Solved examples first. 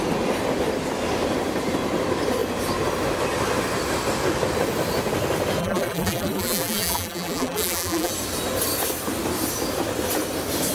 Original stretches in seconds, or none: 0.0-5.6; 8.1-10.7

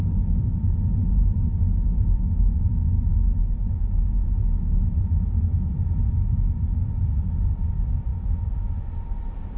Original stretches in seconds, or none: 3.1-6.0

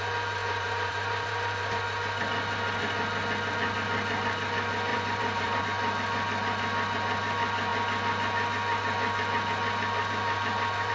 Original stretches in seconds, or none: 0.0-0.4; 1.8-4.9; 5.6-10.9